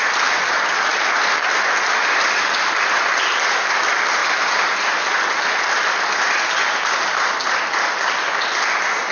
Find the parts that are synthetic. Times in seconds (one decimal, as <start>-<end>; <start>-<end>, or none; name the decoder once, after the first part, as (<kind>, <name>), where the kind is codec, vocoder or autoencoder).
0.9-1.6 (vocoder, BigVGAN v2); 4.2-5.1